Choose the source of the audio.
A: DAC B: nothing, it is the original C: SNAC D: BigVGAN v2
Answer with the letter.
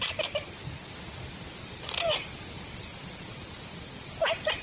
B